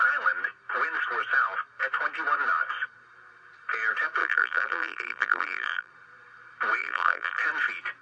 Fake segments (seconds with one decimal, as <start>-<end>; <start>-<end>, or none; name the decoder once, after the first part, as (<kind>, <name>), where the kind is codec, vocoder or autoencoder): 4.2-5.9 (vocoder, BigVGAN v2); 6.8-7.4